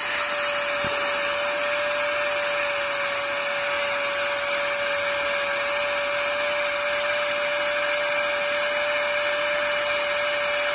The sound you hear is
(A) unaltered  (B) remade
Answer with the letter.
A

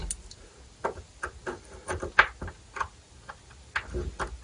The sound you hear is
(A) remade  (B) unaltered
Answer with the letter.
B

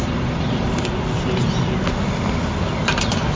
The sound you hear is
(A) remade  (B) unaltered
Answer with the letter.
B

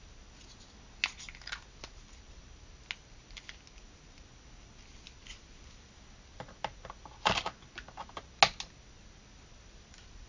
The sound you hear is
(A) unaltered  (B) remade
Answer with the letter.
A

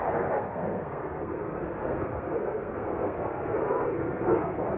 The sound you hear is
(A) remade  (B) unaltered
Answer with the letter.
A